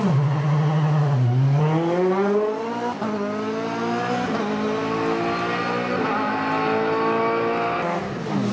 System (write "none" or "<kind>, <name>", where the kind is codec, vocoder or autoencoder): none